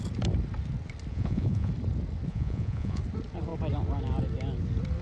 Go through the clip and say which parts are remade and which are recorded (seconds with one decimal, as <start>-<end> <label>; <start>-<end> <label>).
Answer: 0.0-1.1 recorded; 1.1-1.7 remade; 1.7-2.3 recorded; 2.3-3.0 remade; 3.0-5.0 recorded